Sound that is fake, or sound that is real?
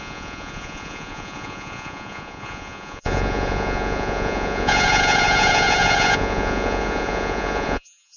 fake